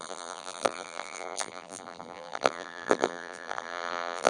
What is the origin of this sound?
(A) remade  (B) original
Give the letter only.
A